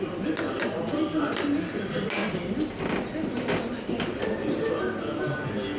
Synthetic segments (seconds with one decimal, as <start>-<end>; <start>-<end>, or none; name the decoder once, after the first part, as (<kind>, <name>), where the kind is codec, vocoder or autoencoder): 2.2-5.2 (vocoder, BigVGAN v2)